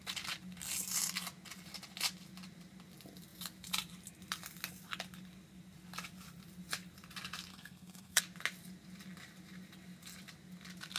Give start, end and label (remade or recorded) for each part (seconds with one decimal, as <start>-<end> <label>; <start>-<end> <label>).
0.0-7.5 recorded; 7.5-8.2 remade; 8.2-11.0 recorded